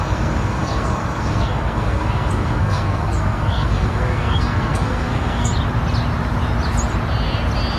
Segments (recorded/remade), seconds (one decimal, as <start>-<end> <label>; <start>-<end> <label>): 0.0-5.5 remade; 5.5-7.8 recorded